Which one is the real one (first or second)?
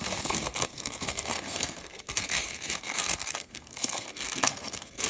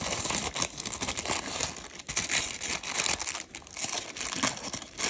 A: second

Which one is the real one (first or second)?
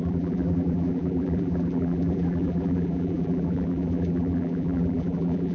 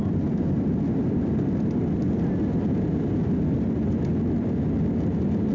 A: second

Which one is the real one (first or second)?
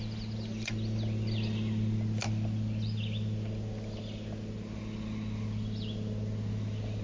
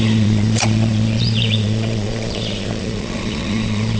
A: first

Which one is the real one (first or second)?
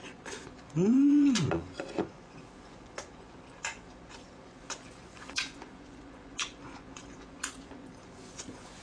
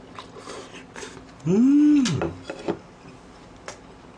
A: second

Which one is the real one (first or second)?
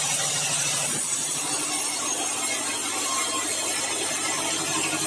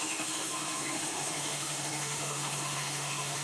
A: first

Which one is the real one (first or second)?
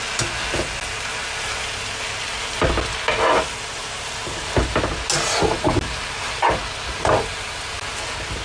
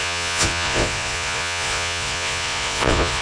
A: first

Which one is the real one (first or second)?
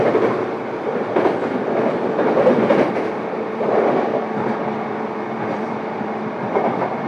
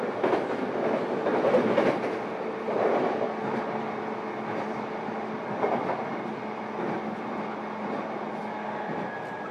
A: second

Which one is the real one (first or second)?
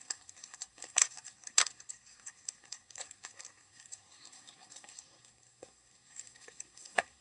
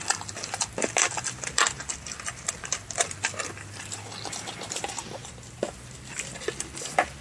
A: second